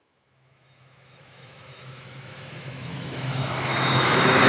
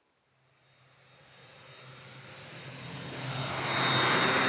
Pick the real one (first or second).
second